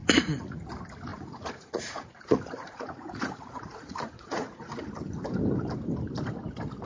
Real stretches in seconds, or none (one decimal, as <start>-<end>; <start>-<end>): 0.6-1.1; 4.7-6.9